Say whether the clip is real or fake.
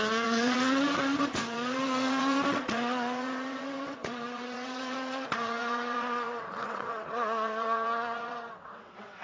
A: fake